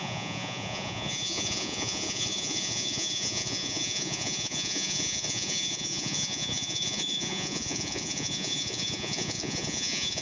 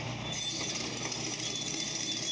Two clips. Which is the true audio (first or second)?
second